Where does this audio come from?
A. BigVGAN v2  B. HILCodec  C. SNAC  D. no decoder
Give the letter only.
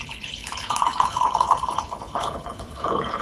B